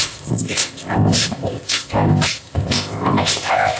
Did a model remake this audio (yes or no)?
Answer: yes